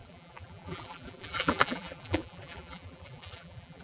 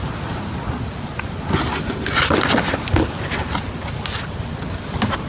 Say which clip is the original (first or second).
second